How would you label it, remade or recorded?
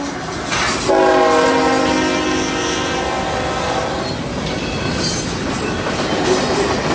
recorded